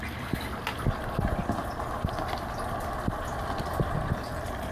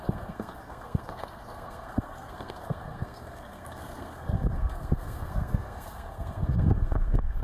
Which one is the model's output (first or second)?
second